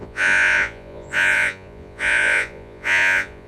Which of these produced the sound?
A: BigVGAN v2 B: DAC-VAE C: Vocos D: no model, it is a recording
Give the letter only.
C